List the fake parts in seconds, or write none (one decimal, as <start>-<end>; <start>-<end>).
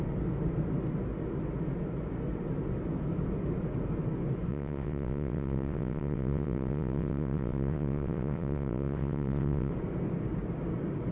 4.5-9.7